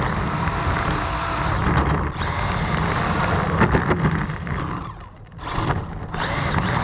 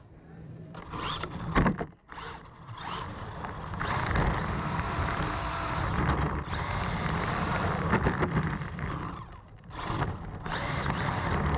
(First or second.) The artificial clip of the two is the second